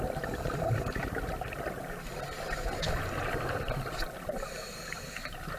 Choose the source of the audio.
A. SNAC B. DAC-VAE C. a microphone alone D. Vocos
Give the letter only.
C